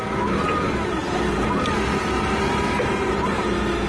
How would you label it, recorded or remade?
recorded